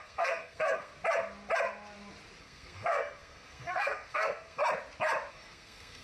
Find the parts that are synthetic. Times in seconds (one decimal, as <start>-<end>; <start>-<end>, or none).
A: 0.0-0.9; 2.4-4.6; 5.3-6.0